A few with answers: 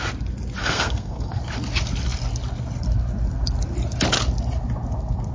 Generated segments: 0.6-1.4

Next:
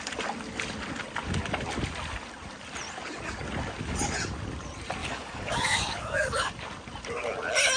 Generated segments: 5.0-6.5

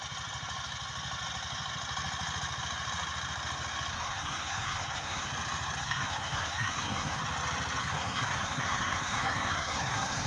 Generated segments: 3.9-5.3; 5.8-7.2; 7.8-10.3

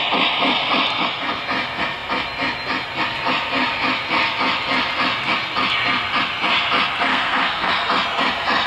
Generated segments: 7.1-7.7

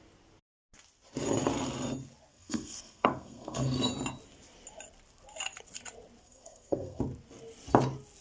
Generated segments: 2.3-3.9; 6.2-7.0

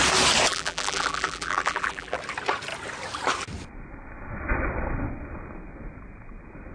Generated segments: 0.5-2.2

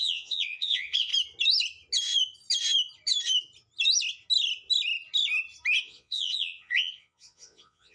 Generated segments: 0.0-1.1; 5.8-7.9

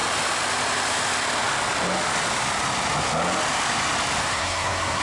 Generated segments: 4.2-5.0